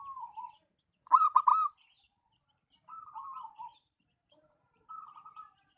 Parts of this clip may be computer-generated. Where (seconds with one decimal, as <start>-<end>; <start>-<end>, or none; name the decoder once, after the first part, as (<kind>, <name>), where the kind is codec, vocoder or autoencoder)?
1.5-4.9 (vocoder, BigVGAN v2)